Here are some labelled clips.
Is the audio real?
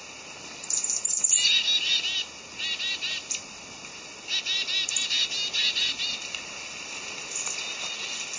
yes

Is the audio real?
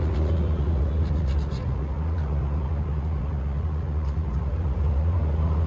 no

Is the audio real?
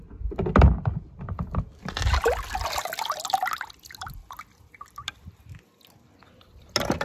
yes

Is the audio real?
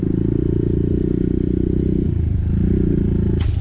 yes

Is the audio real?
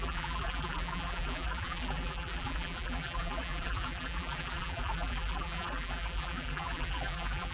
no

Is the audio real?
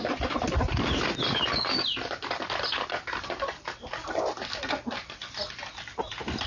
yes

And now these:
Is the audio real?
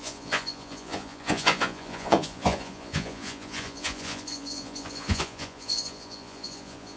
no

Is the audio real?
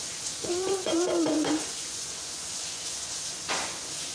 no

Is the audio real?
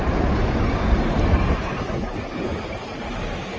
no